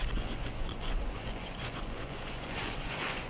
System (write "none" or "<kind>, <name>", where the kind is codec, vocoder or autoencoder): vocoder, Vocos